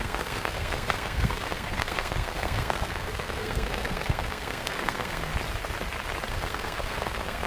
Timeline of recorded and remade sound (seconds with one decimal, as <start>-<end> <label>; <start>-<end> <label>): 0.0-5.3 remade; 5.3-6.3 recorded; 6.3-7.5 remade